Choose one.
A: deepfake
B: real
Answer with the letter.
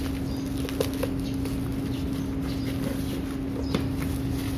B